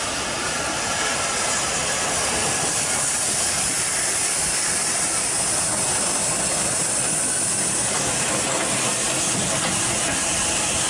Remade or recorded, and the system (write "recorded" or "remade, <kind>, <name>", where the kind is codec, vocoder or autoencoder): recorded